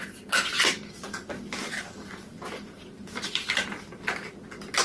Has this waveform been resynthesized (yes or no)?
no